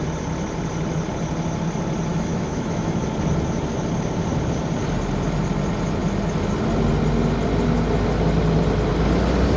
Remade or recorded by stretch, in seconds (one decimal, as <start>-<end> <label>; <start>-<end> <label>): 0.0-2.1 recorded; 2.1-3.0 remade; 3.0-9.6 recorded